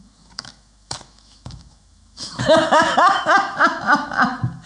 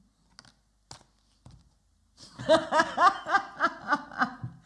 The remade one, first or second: first